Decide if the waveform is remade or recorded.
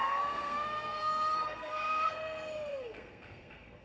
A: remade